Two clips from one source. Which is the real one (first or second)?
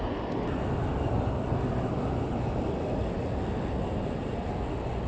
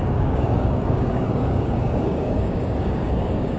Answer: first